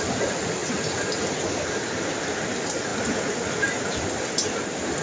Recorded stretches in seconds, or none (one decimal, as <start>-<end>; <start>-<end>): 0.0-5.0